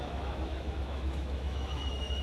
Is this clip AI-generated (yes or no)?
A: yes